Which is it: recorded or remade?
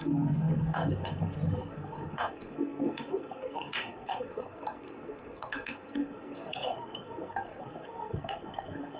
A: remade